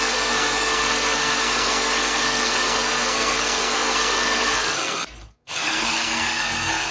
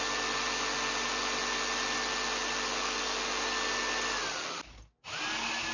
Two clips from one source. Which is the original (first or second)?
second